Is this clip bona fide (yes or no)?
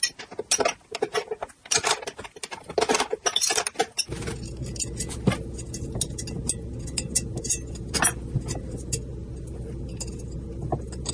yes